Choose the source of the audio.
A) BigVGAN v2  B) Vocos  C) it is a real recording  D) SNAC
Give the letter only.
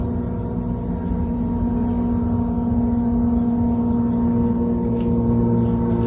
C